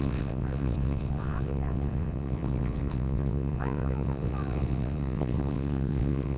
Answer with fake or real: fake